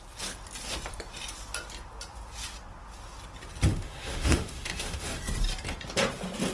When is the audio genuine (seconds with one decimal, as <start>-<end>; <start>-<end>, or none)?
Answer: 0.0-3.7; 5.1-6.5